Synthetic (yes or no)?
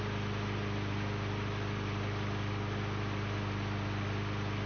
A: no